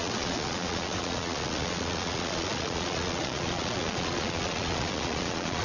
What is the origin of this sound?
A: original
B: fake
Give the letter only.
B